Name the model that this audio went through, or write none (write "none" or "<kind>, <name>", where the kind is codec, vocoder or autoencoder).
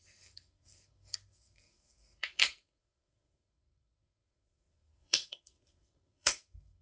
codec, SNAC